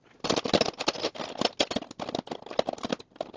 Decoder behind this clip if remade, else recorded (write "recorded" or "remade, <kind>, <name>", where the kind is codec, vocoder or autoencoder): recorded